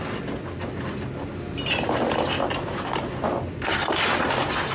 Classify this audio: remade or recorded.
recorded